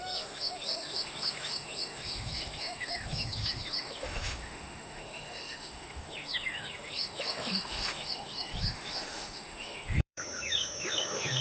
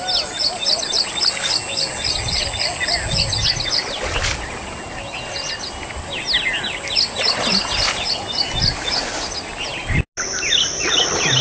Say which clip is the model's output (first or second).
first